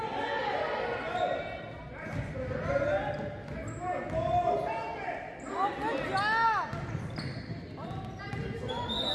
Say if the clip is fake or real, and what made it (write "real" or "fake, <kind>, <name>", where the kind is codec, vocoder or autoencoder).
real